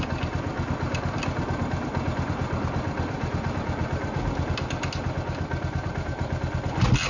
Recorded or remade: recorded